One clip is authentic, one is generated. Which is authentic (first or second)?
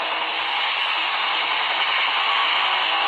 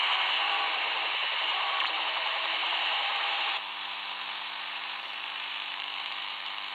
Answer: first